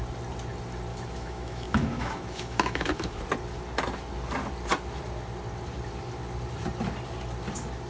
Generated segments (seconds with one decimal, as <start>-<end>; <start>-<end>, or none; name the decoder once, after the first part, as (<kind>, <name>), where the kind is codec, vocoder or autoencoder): 0.9-3.2 (autoencoder, DAC-VAE)